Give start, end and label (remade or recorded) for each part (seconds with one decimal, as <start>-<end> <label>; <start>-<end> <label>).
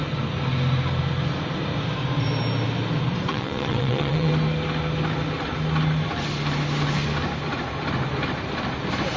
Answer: 0.0-3.3 recorded; 3.3-4.3 remade; 4.3-9.2 recorded